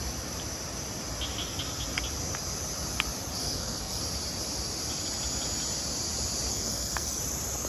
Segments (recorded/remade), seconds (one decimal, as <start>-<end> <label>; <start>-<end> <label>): 0.0-3.4 recorded; 3.4-4.0 remade; 4.0-6.5 recorded; 6.5-7.2 remade; 7.2-7.7 recorded